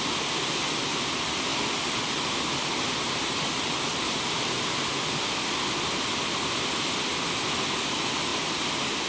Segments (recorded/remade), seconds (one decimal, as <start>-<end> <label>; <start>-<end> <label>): 0.0-1.5 recorded; 1.5-2.3 remade; 2.3-3.9 recorded; 3.9-5.5 remade; 5.5-8.3 recorded; 8.3-9.1 remade